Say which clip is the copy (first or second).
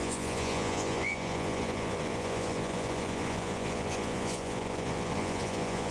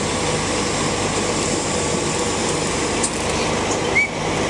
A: first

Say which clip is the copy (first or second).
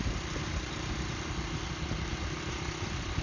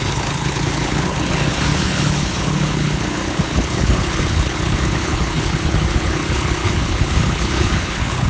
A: second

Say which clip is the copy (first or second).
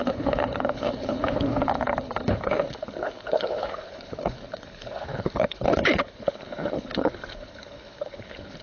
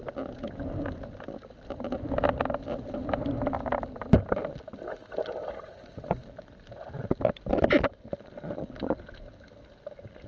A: first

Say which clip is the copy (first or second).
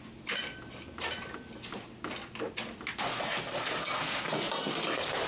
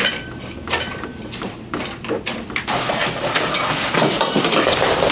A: second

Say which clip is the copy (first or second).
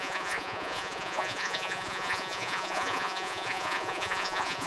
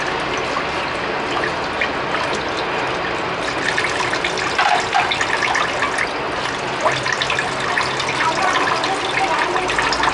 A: first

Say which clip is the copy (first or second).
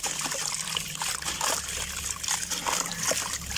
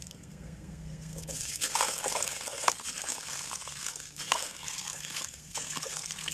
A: second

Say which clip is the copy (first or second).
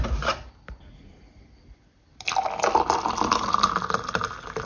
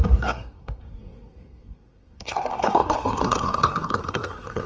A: second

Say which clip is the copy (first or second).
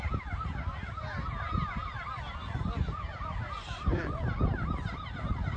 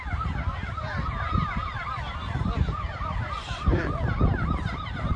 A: second